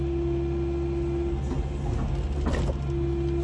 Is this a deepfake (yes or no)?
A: no